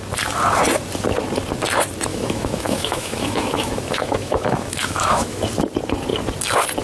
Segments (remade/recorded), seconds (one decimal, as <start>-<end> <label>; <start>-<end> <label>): 0.0-2.1 recorded; 2.1-5.4 remade; 5.4-6.8 recorded